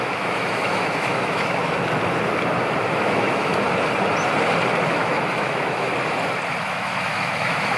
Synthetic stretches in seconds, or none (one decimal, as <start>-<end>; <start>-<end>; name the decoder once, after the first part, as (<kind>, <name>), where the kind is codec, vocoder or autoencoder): 0.0-1.6 (autoencoder, DAC-VAE); 3.0-3.5; 4.9-5.9; 6.6-7.8

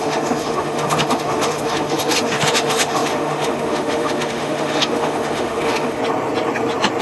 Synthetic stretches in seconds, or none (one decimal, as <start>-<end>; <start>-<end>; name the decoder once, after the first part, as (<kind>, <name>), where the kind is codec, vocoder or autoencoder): 0.0-6.0 (autoencoder, DAC-VAE)

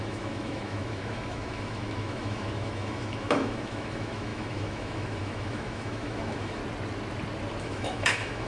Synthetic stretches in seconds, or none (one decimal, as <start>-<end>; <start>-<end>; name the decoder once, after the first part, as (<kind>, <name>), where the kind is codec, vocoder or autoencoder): 0.0-6.6 (autoencoder, DAC-VAE); 7.6-8.5

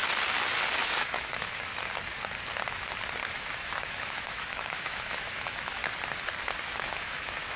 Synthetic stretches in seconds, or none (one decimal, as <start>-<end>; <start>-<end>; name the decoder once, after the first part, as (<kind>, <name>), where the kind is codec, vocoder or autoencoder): 0.8-1.7 (autoencoder, DAC-VAE); 3.3-5.8; 6.6-7.6

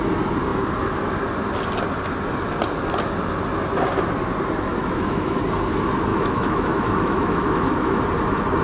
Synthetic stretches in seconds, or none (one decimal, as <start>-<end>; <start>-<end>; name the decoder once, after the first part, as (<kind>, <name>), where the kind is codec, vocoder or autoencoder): 4.7-5.4 (autoencoder, DAC-VAE); 6.1-8.0